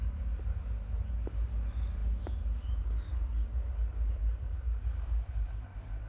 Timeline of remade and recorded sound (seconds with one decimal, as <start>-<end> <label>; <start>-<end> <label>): 0.0-3.9 recorded; 3.9-6.1 remade